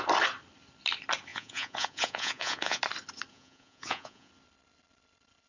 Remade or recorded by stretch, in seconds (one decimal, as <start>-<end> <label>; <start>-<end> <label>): 0.0-1.3 recorded; 1.3-2.8 remade; 2.8-3.3 recorded; 3.3-4.3 remade; 4.3-5.5 recorded